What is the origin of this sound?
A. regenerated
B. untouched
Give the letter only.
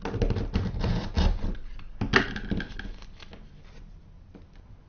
B